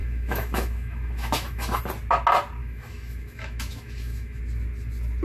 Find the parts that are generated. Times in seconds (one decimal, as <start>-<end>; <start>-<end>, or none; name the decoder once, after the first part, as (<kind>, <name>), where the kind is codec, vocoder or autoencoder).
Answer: 0.0-1.8 (autoencoder, DAC-VAE); 2.6-4.4